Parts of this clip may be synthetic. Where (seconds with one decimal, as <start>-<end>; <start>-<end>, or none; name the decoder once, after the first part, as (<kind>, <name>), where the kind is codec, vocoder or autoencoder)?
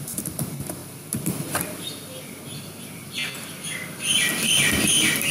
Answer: none